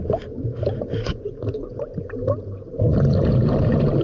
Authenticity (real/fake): real